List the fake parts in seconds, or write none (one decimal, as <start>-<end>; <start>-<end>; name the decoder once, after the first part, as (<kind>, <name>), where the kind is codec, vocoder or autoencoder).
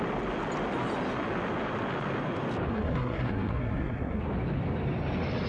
2.7-4.2 (codec, SNAC)